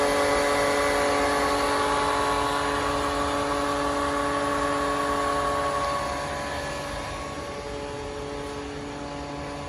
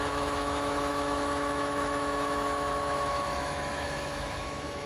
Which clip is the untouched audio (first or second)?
first